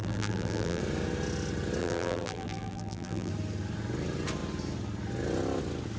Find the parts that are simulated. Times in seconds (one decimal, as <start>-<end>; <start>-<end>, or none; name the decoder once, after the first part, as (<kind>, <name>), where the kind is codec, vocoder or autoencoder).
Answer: 0.0-0.8 (vocoder, BigVGAN v2); 1.8-3.3